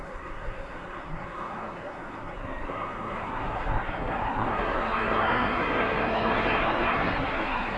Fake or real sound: fake